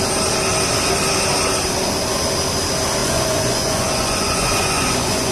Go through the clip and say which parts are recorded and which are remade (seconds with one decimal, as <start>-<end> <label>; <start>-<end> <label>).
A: 0.0-3.0 recorded; 3.0-5.3 remade